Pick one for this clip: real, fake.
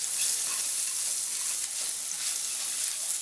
real